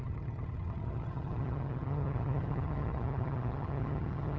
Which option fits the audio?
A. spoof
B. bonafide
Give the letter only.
A